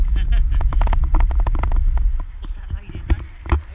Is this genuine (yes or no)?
yes